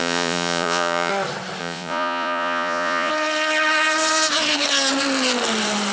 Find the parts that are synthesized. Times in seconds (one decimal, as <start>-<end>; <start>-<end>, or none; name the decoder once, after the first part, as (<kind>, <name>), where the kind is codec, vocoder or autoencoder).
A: 0.0-1.1 (vocoder, Vocos); 1.6-3.1